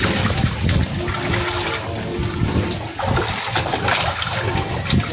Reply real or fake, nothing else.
real